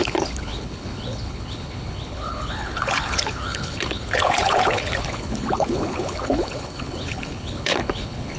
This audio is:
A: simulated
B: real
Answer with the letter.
A